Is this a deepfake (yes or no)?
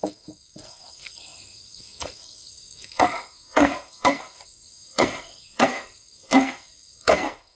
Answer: yes